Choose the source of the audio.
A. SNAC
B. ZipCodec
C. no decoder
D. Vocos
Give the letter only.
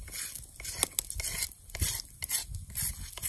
C